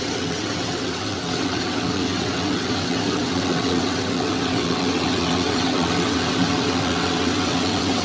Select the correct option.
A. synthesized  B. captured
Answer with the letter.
A